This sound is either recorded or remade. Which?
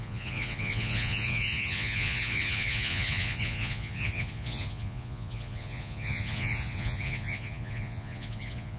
remade